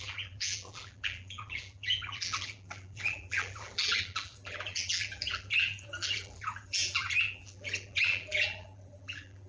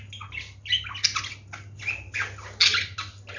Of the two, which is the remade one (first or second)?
first